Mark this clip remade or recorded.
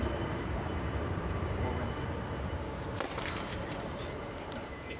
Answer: remade